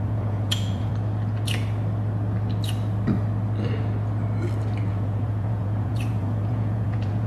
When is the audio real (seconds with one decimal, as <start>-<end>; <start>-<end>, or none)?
0.9-4.9